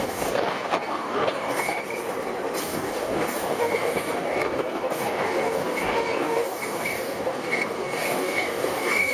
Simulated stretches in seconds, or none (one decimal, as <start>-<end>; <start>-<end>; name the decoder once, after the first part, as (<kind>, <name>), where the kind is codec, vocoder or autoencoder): 0.0-1.8 (codec, DAC); 2.6-9.1